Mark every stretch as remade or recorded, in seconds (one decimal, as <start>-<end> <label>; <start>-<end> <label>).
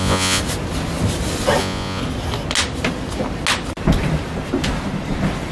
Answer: 0.0-0.4 remade; 0.4-1.6 recorded; 1.6-2.0 remade; 2.0-5.5 recorded